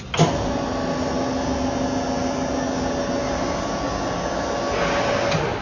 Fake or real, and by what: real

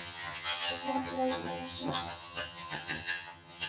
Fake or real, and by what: fake, vocoder, HiFi-GAN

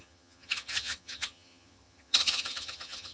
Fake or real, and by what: fake, vocoder, HiFi-GAN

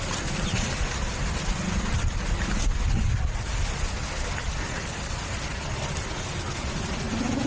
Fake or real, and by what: real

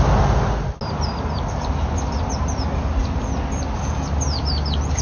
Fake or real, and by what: real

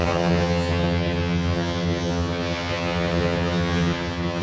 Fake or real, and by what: fake, vocoder, HiFi-GAN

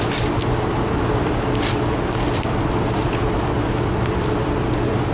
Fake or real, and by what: real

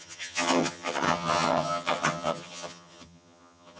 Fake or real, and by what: fake, vocoder, HiFi-GAN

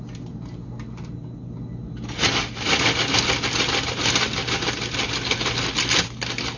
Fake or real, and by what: real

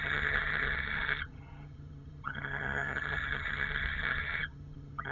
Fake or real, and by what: fake, vocoder, HiFi-GAN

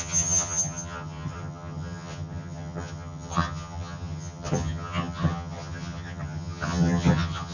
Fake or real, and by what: fake, vocoder, HiFi-GAN